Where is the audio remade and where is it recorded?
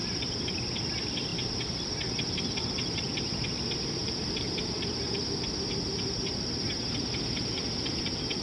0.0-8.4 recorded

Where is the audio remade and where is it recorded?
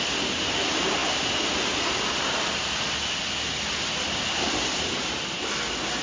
0.0-6.0 recorded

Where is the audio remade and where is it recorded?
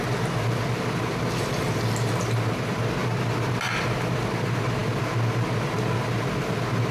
0.0-6.9 recorded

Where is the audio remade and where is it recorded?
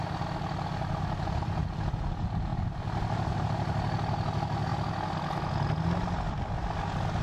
0.0-7.2 recorded